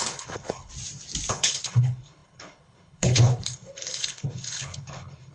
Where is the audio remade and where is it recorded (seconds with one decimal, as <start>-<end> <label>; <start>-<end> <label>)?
0.0-0.7 remade; 0.7-1.3 recorded; 1.3-5.3 remade